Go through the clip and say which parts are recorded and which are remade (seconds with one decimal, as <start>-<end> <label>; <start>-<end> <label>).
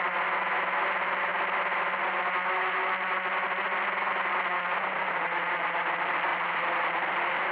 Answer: 0.0-7.5 recorded